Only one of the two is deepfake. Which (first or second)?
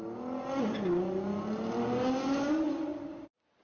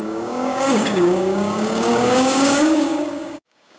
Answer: second